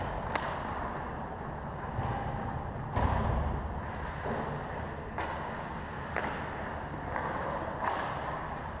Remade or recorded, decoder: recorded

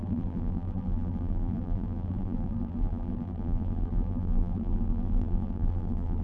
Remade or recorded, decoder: remade, vocoder, BigVGAN v2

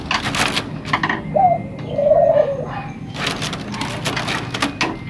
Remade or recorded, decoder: recorded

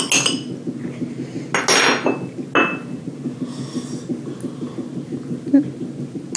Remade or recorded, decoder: recorded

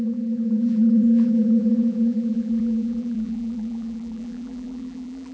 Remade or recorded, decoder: remade, vocoder, BigVGAN v2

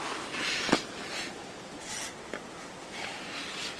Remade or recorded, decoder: recorded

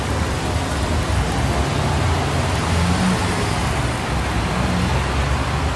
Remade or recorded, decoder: recorded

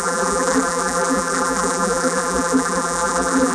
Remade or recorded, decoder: remade, vocoder, BigVGAN v2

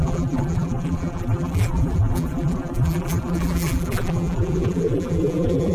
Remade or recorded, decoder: remade, vocoder, BigVGAN v2